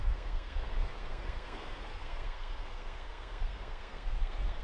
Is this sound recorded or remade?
remade